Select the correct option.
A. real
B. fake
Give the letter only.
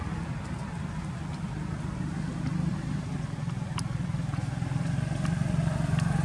A